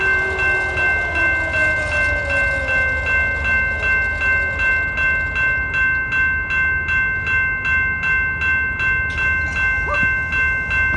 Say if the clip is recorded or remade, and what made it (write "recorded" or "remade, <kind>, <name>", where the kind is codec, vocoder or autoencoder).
recorded